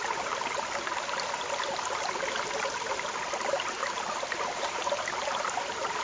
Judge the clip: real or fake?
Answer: real